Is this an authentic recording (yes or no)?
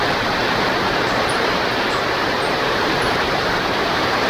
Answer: no